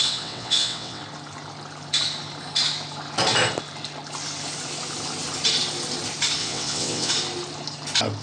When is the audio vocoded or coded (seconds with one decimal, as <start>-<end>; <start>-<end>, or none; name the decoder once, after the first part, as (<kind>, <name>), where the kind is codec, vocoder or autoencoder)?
0.0-1.0 (vocoder, WaveNeXt); 6.4-7.1

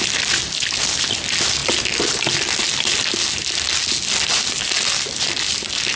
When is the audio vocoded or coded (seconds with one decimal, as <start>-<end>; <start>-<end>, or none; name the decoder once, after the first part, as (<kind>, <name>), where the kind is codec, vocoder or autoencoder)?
none

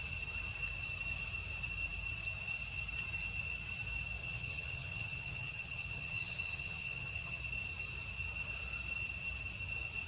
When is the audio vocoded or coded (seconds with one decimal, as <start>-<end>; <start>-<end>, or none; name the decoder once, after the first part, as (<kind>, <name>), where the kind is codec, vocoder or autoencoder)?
4.2-7.4 (vocoder, HiFi-GAN)

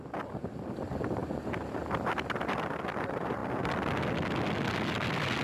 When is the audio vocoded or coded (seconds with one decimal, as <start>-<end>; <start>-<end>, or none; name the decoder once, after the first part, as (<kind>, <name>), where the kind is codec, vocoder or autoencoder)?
none

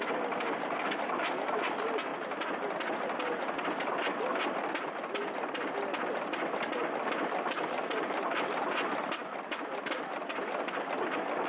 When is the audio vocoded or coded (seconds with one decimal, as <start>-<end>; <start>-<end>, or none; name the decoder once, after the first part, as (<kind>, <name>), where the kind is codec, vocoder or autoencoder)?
none

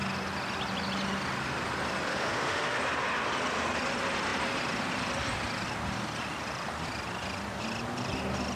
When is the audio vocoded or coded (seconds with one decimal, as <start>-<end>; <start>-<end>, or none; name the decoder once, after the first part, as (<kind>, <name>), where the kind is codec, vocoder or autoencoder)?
2.1-2.8 (autoencoder, DAC-VAE)